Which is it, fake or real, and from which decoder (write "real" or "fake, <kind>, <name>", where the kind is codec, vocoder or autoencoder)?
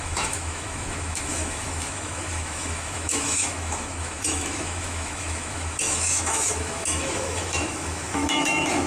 fake, autoencoder, DAC-VAE